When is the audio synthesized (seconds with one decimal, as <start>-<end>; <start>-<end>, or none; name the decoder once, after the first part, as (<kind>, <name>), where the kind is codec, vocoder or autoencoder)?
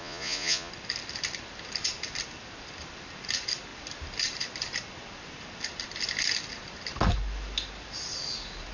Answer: 0.0-0.7 (vocoder, Vocos)